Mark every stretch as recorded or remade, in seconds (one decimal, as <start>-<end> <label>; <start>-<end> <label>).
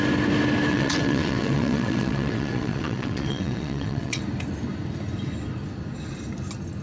0.0-0.7 recorded; 0.7-4.2 remade; 4.2-6.8 recorded